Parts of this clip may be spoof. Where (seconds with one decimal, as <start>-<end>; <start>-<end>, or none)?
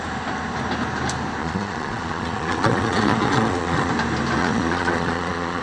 1.4-3.9; 4.4-5.6